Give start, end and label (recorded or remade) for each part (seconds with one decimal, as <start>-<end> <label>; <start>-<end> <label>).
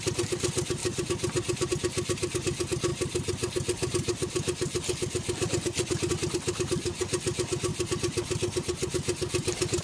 0.0-9.8 recorded